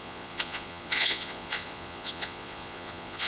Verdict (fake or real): fake